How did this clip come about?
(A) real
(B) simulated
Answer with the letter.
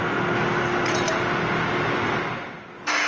A